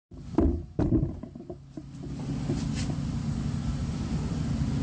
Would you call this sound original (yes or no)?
yes